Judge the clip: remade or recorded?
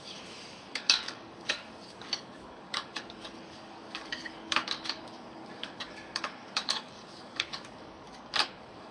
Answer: remade